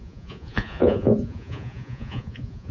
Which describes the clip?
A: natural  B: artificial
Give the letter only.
B